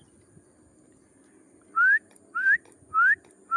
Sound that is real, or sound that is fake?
real